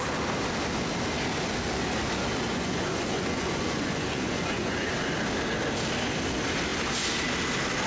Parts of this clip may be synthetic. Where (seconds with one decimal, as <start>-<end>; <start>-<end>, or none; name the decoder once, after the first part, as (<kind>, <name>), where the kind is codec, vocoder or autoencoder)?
2.5-4.9 (vocoder, Vocos)